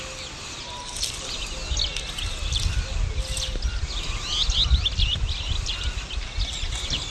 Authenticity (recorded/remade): recorded